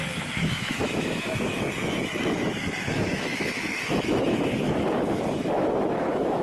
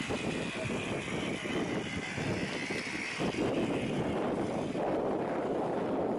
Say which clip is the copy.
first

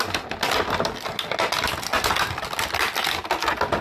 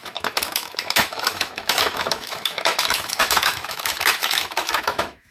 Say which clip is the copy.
second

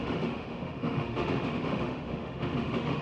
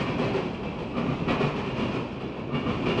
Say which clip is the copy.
first